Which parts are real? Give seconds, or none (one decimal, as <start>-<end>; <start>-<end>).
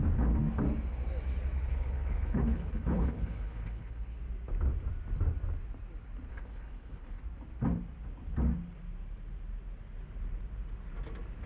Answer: 0.0-1.7; 4.2-6.3; 7.2-11.5